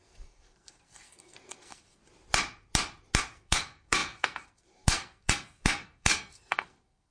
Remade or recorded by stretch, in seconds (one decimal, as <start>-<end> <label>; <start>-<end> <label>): 0.0-2.0 remade; 2.0-3.2 recorded; 3.2-7.1 remade